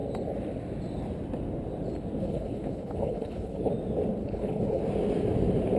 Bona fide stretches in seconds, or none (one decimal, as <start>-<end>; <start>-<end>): 0.0-2.2; 3.7-4.2; 4.8-5.8